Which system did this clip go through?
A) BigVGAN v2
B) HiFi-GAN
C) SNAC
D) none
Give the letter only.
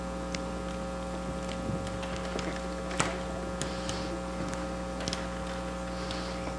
D